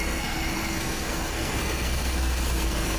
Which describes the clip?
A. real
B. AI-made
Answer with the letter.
B